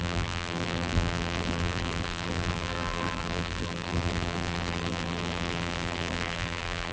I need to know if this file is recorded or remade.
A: remade